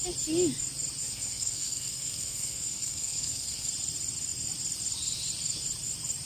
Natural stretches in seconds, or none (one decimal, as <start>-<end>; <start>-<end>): 0.0-1.0; 3.7-6.3